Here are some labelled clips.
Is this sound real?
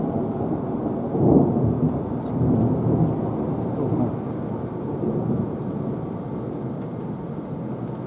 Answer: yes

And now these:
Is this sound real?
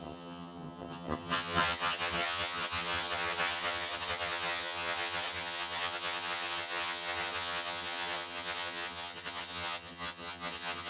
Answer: no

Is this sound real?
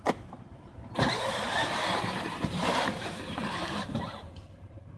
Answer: no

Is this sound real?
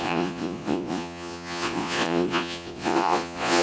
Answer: no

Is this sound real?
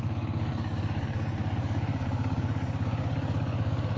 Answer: no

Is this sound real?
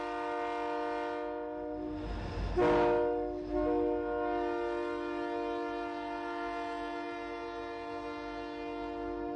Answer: yes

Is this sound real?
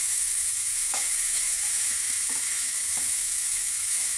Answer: no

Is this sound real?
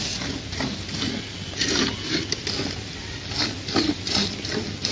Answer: yes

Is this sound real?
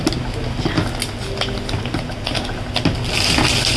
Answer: yes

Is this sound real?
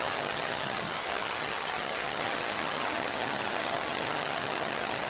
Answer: no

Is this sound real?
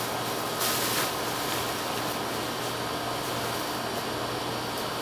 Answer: yes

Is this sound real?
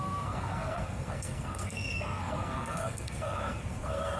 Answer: no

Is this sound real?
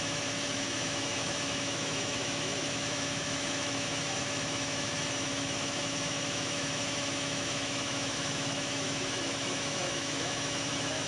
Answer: no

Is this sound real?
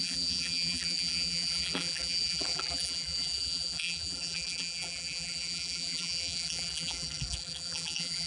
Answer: no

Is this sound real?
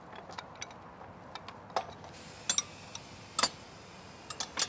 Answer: yes